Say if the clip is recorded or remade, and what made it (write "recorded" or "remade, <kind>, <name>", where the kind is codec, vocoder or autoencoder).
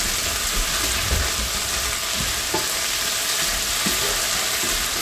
recorded